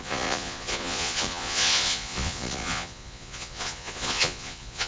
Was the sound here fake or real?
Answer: fake